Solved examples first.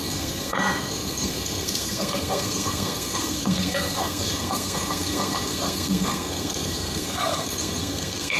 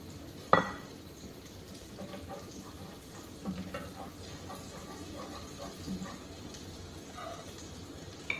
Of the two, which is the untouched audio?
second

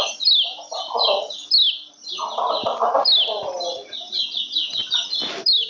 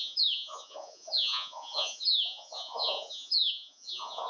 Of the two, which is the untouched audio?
first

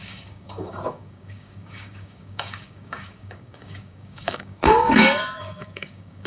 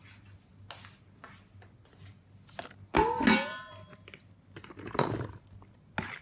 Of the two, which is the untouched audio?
second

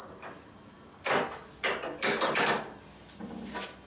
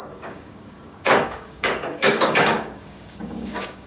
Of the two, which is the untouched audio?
first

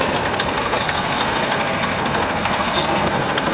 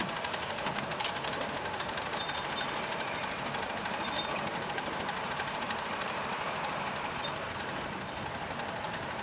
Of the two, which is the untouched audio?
second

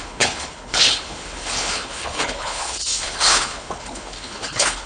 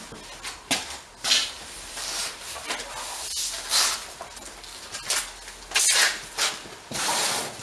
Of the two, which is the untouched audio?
second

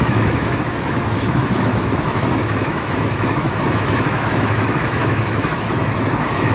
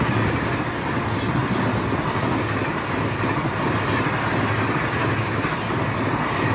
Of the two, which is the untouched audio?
second